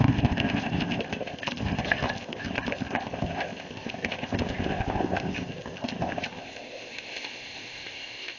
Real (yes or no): no